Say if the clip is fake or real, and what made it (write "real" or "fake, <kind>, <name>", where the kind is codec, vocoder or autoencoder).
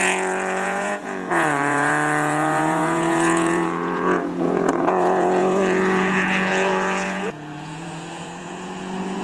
fake, vocoder, Vocos